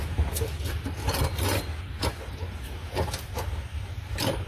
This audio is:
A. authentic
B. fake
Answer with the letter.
A